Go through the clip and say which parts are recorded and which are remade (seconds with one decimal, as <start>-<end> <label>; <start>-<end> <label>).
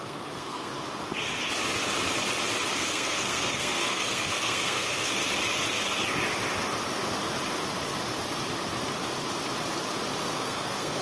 0.0-0.7 remade; 0.7-2.7 recorded; 2.7-5.2 remade; 5.2-10.2 recorded; 10.2-11.0 remade